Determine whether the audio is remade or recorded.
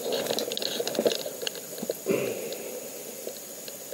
recorded